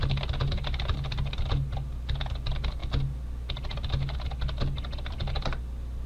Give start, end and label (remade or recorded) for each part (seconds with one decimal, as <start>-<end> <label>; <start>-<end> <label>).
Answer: 0.0-6.1 recorded